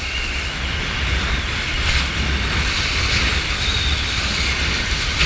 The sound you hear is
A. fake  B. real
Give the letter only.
B